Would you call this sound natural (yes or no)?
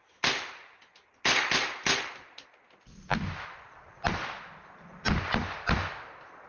yes